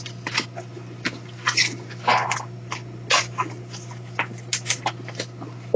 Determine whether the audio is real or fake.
real